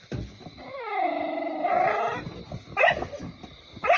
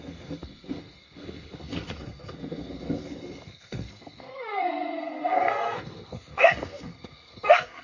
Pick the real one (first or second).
first